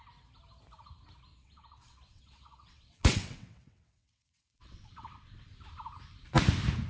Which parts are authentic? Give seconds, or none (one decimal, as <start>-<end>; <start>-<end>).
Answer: 0.0-1.3; 5.4-6.9